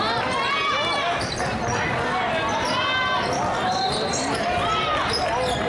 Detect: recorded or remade recorded